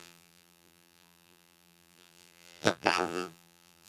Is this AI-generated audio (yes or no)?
yes